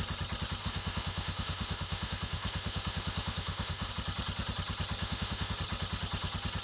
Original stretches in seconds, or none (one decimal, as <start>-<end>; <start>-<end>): 0.0-0.6; 3.9-5.0; 5.5-6.6